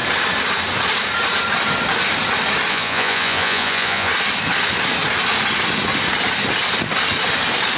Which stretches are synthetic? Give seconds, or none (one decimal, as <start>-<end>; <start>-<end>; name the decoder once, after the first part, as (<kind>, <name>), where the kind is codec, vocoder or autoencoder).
2.7-4.1 (vocoder, Vocos)